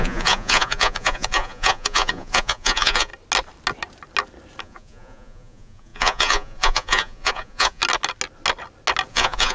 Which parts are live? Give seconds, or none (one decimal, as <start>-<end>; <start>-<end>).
3.1-4.6; 7.8-9.1